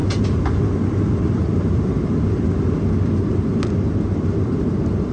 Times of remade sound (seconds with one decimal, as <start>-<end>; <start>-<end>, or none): 1.2-3.5; 4.4-5.1